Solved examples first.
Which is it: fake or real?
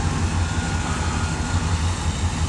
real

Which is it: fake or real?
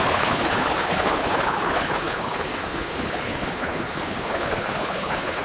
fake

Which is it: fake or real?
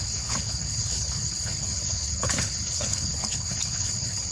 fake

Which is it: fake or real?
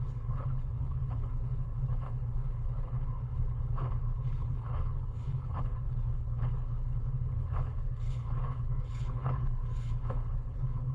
fake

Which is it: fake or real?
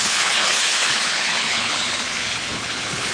fake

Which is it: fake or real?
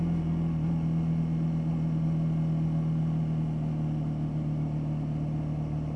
real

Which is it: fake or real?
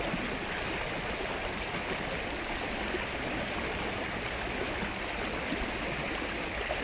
real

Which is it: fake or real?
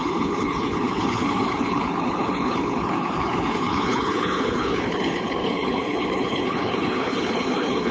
fake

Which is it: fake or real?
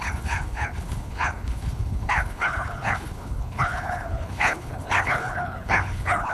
fake